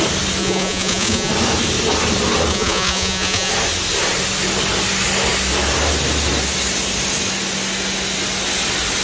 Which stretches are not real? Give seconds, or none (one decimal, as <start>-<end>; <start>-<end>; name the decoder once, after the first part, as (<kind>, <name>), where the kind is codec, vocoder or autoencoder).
0.4-1.3 (vocoder, Vocos); 2.5-3.5